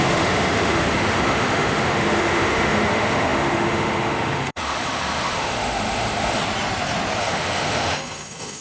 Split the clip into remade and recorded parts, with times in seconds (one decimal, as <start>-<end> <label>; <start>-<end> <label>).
0.0-6.4 remade; 6.4-7.2 recorded; 7.2-8.6 remade